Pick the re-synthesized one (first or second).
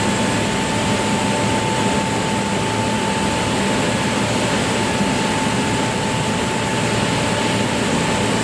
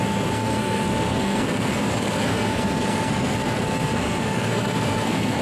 second